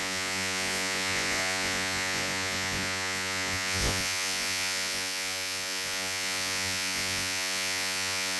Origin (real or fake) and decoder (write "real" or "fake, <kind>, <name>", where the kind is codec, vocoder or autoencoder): fake, vocoder, Vocos